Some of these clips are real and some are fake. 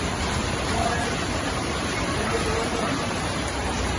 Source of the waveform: fake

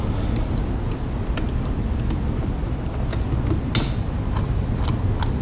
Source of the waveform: real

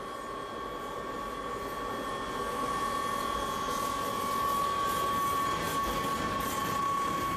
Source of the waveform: real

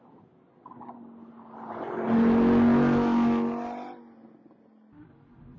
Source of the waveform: real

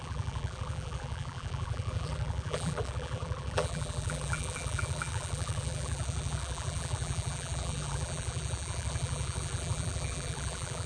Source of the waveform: fake